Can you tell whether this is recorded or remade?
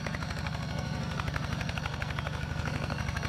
remade